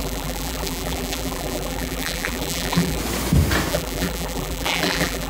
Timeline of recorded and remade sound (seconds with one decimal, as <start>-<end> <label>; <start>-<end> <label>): 0.0-3.0 remade; 3.0-3.7 recorded; 3.7-5.3 remade